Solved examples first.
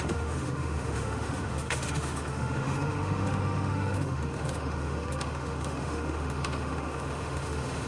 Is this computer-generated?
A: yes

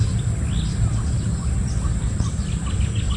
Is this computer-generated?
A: no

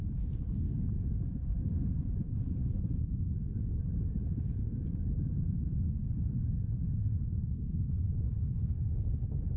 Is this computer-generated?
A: no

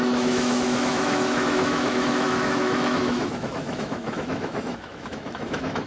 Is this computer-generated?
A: yes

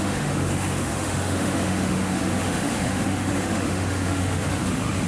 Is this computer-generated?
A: yes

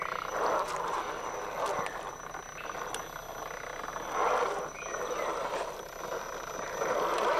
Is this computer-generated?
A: no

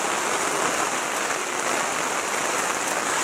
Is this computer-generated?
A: no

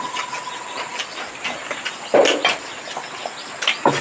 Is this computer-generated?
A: no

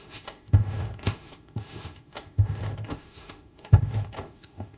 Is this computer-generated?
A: yes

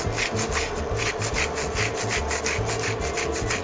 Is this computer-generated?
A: no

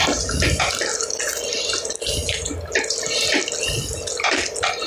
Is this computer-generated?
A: no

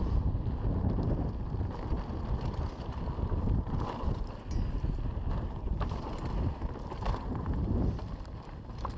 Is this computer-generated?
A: no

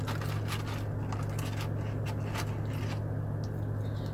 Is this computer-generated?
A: no